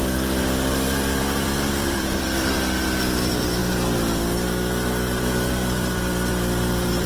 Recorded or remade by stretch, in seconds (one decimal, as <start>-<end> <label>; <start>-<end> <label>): 0.0-3.6 remade; 3.6-5.5 recorded; 5.5-7.1 remade